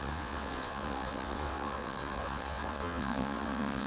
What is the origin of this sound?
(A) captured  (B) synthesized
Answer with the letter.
B